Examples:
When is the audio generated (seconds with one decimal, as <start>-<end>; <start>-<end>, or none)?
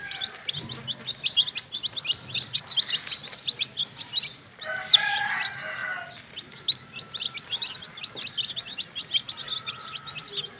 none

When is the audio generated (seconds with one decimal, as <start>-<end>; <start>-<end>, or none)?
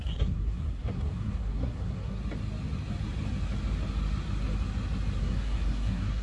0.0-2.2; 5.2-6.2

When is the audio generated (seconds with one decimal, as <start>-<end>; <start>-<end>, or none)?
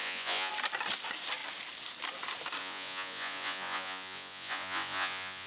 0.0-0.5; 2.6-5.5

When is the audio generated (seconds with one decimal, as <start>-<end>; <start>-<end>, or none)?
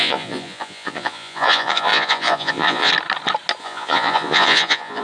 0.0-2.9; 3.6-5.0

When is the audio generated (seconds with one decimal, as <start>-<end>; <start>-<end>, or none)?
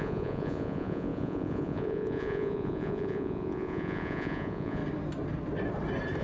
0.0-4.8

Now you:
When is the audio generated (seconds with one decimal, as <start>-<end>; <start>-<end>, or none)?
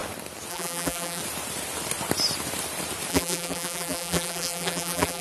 0.5-1.2; 3.1-5.2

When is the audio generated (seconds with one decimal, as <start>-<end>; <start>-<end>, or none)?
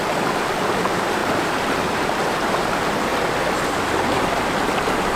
0.0-3.1; 4.2-5.2